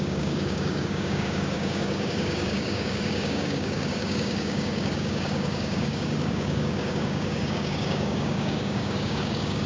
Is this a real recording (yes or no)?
no